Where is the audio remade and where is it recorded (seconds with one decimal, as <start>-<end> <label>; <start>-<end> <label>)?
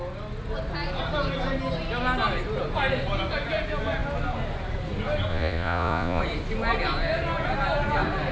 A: 0.0-5.3 recorded; 5.3-6.2 remade; 6.2-8.3 recorded